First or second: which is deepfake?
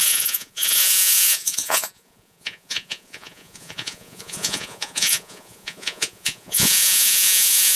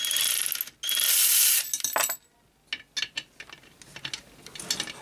first